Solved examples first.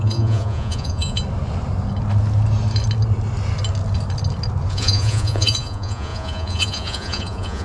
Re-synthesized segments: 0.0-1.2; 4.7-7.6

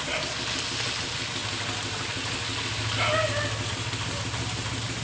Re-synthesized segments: none

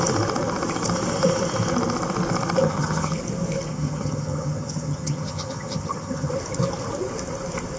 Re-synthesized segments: 2.6-3.1; 3.7-6.3

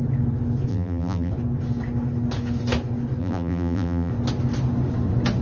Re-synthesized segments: 0.7-1.3; 3.2-4.1

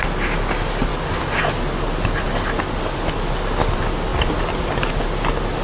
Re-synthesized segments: none